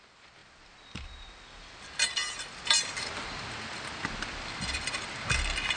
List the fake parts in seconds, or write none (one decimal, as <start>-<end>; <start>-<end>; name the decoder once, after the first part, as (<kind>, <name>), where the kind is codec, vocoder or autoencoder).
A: none